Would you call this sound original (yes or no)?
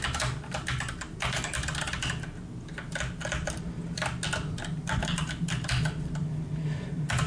yes